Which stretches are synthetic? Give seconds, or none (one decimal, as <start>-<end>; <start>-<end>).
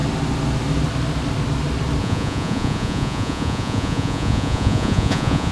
2.0-5.5